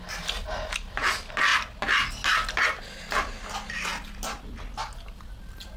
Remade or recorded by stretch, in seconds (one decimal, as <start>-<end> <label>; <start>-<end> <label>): 0.0-5.8 recorded